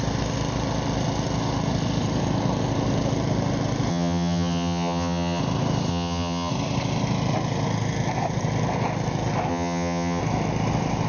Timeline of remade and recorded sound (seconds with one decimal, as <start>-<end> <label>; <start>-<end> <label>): 0.0-3.9 recorded; 3.9-5.4 remade; 5.4-5.9 recorded; 5.9-6.5 remade; 6.5-9.5 recorded; 9.5-10.2 remade; 10.2-11.1 recorded